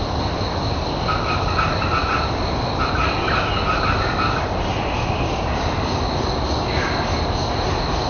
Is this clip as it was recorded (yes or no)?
yes